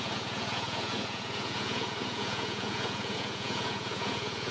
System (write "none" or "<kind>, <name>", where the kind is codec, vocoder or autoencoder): vocoder, Vocos